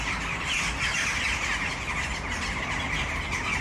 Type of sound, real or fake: real